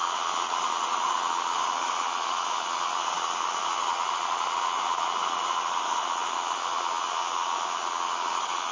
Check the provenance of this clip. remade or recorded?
remade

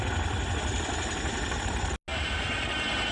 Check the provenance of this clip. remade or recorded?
recorded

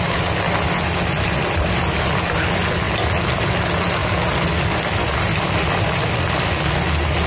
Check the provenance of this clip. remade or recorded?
recorded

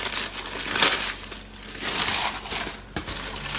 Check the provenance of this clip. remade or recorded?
recorded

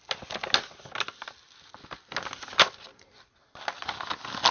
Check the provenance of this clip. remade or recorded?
recorded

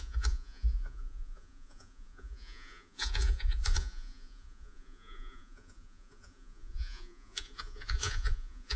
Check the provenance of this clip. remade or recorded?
remade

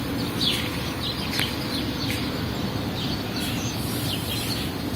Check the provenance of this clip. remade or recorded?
recorded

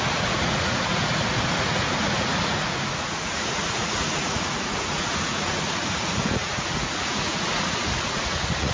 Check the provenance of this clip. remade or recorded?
remade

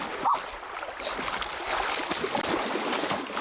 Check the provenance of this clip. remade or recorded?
recorded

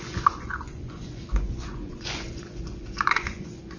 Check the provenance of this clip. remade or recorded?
remade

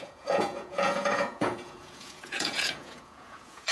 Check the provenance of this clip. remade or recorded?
remade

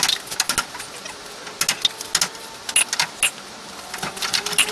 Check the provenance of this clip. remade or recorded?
recorded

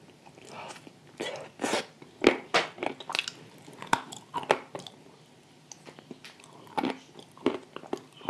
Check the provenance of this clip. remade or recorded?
recorded